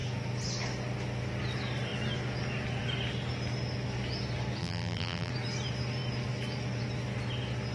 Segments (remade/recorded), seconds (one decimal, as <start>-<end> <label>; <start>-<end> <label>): 0.0-4.6 recorded; 4.6-5.3 remade; 5.3-7.7 recorded